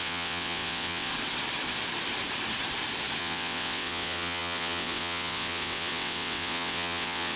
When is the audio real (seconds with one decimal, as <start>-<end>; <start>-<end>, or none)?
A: 1.1-3.2